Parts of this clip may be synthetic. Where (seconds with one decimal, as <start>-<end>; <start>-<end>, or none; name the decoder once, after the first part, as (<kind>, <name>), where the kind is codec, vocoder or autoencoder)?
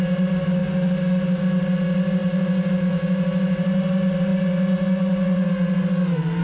none